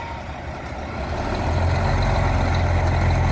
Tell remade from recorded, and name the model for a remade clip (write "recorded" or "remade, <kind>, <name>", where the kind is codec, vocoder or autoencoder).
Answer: recorded